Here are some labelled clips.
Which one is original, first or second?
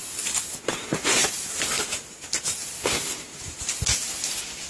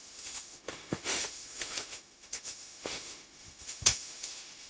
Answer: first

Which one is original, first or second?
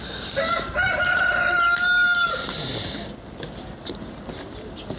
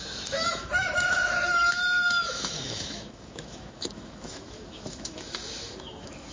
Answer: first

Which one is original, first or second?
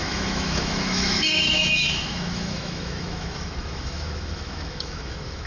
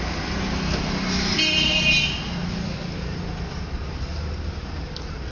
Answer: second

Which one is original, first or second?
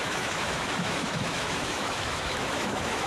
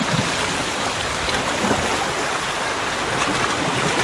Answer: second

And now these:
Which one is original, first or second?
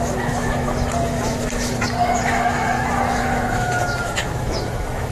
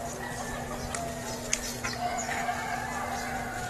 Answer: second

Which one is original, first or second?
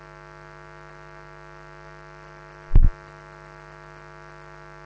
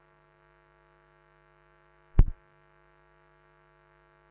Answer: first